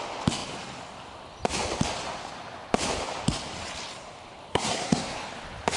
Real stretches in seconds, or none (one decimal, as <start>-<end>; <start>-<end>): 0.0-4.5; 5.2-5.8